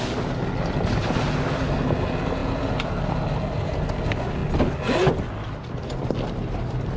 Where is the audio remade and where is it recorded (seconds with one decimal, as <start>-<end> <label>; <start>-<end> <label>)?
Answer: 0.0-7.0 recorded